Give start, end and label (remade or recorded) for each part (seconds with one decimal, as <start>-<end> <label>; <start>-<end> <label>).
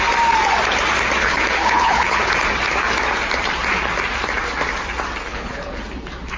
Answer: 0.0-1.2 recorded; 1.2-2.3 remade; 2.3-5.3 recorded; 5.3-5.8 remade; 5.8-6.4 recorded